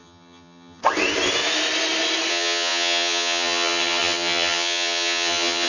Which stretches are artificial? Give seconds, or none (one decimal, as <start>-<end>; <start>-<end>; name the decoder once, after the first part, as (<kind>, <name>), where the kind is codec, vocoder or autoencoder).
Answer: 0.0-0.8 (vocoder, HiFi-GAN); 2.3-5.7